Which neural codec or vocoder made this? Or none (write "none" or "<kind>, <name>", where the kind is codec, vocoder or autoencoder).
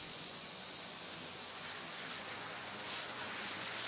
vocoder, Vocos